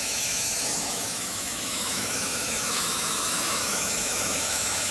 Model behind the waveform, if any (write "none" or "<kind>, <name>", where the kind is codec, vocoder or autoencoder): autoencoder, DAC-VAE